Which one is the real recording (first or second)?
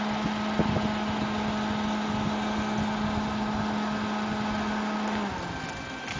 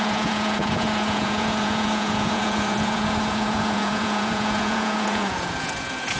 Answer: first